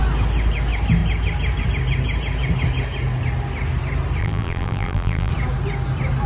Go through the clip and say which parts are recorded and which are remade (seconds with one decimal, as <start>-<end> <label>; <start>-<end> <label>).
0.0-4.2 recorded; 4.2-5.3 remade; 5.3-6.3 recorded